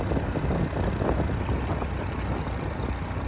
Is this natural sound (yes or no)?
yes